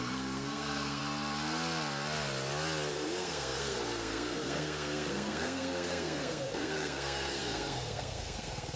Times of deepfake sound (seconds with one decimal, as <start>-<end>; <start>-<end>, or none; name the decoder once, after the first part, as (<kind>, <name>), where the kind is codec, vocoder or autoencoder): 0.0-1.0 (codec, SNAC); 2.9-8.8